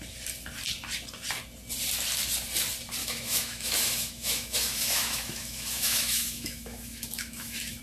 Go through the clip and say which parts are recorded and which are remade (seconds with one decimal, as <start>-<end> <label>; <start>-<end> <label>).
0.0-3.0 recorded; 3.0-7.8 remade